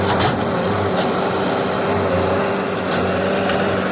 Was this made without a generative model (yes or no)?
yes